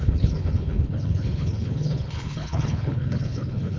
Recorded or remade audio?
remade